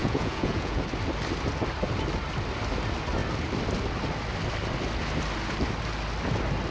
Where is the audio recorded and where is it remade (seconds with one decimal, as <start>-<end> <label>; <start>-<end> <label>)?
0.0-0.8 remade; 0.8-6.7 recorded